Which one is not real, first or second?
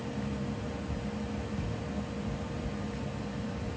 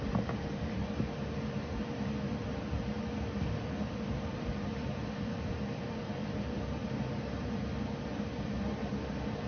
second